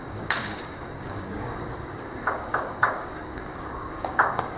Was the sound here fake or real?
fake